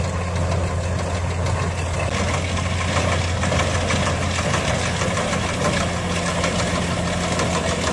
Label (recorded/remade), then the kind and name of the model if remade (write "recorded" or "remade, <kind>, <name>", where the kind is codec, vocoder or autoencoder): recorded